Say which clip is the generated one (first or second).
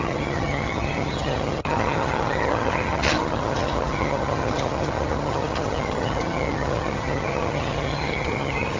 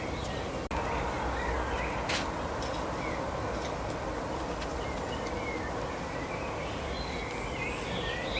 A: first